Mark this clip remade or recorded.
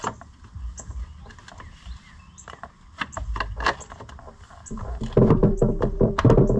recorded